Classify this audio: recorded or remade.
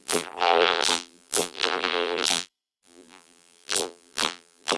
remade